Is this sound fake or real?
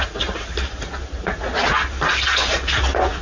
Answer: real